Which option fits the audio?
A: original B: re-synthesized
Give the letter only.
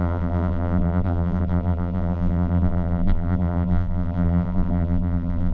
B